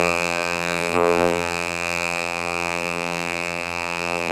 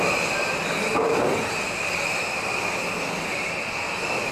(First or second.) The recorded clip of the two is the second